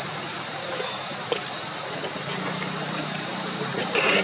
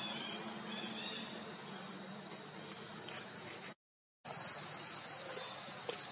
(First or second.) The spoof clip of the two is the first